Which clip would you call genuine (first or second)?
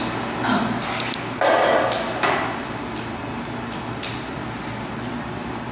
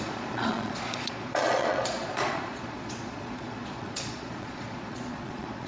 first